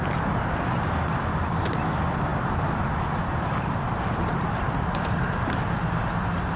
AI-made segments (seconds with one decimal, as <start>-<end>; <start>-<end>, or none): none